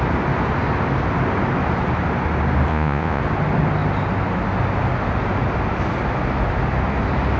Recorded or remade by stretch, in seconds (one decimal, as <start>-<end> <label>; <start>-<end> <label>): 0.0-2.7 recorded; 2.7-3.2 remade; 3.2-7.4 recorded